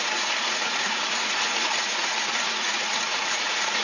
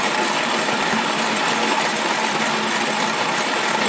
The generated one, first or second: first